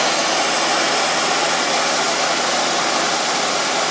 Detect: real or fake real